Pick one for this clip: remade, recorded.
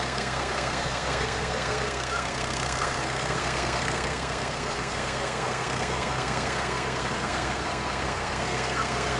remade